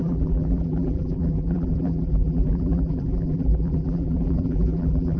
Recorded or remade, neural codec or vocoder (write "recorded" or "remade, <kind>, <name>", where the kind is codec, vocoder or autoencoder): remade, vocoder, BigVGAN v2